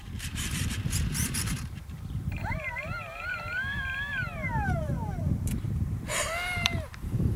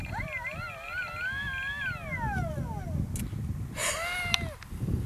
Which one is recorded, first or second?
second